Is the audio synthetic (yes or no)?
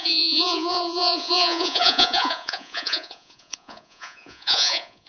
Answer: yes